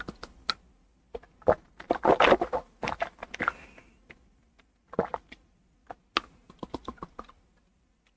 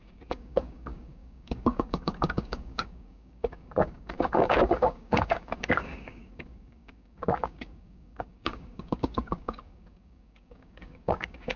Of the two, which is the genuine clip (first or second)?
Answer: first